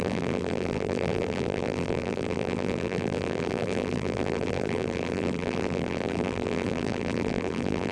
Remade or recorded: remade